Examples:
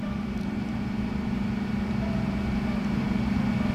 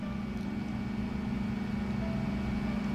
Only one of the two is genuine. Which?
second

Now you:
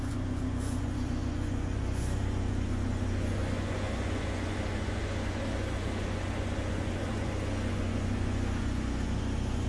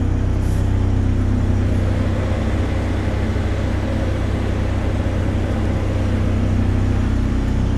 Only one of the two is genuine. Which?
second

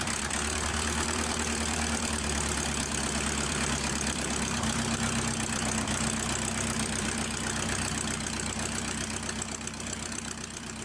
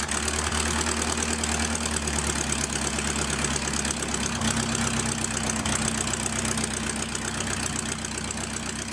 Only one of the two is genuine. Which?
second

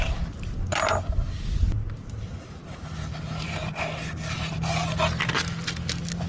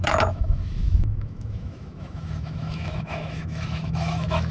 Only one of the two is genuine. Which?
first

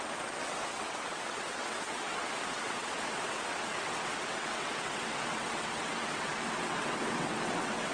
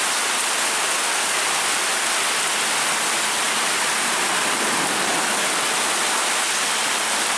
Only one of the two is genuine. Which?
second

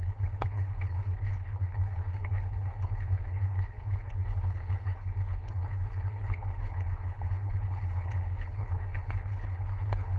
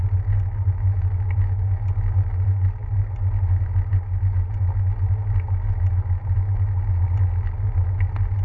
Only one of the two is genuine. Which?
second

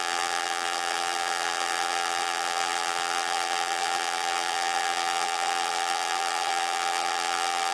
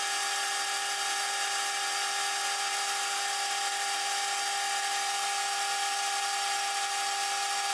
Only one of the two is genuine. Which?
second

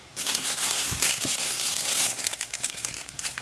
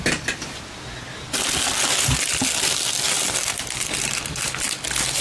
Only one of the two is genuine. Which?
second